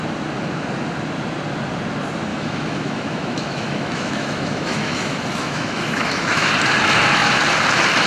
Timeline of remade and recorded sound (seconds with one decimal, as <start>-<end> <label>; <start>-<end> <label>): 0.0-2.3 recorded; 2.3-6.5 remade; 6.5-8.1 recorded